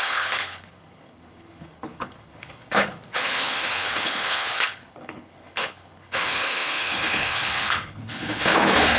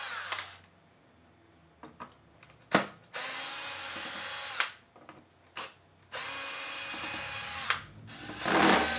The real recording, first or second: second